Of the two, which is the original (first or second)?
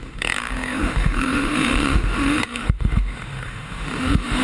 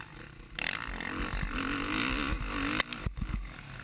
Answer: second